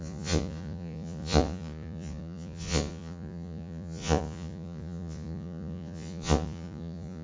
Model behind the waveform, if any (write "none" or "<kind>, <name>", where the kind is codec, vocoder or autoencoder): vocoder, Vocos